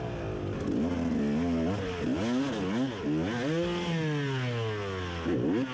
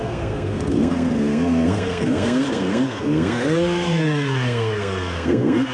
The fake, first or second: second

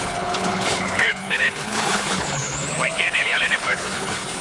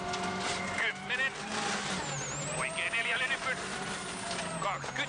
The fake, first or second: first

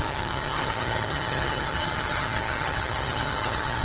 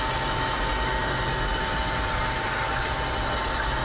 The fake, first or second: first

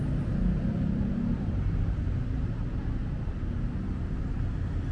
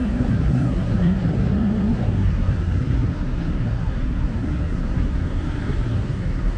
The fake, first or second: second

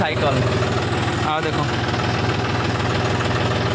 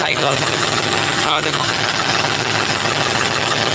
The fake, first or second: second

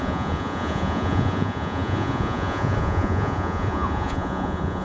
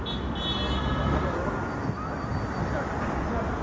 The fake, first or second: first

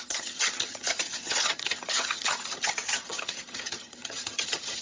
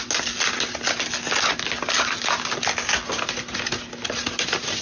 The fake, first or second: first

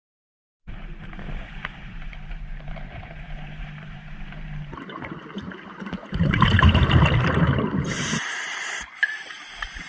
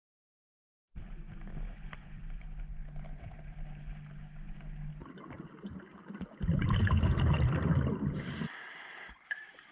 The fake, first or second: first